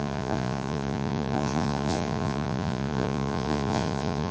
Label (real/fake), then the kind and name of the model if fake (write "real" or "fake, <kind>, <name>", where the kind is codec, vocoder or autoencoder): fake, vocoder, Vocos